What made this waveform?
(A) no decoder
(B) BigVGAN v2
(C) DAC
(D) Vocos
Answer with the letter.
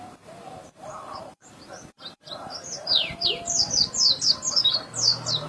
B